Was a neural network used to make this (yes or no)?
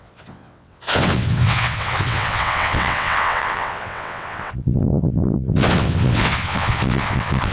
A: yes